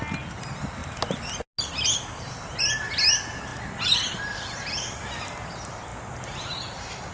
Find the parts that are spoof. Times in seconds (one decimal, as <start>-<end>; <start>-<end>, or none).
none